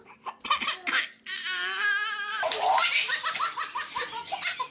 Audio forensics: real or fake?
real